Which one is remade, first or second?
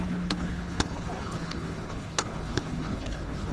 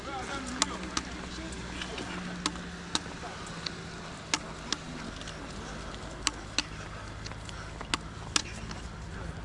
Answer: first